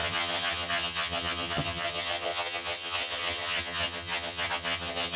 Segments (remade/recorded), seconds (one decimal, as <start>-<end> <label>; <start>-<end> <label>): 0.0-5.2 remade